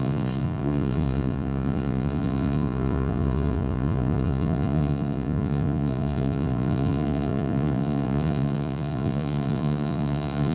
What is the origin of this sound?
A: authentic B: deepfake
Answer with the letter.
B